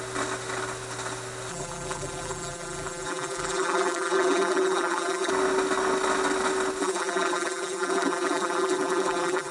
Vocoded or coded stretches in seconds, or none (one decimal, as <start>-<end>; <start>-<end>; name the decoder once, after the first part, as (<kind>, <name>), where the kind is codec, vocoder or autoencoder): 1.5-5.3 (vocoder, BigVGAN v2); 6.8-9.5